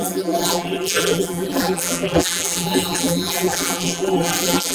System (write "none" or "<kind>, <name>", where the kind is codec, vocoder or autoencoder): vocoder, BigVGAN v2